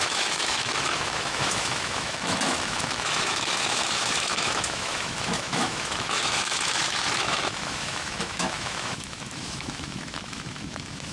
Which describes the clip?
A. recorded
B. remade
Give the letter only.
B